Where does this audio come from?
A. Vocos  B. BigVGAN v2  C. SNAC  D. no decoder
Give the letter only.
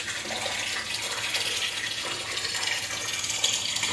D